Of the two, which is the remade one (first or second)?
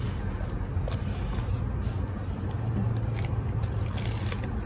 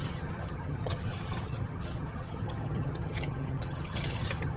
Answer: second